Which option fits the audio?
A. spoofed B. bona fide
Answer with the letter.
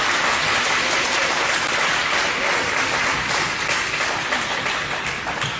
B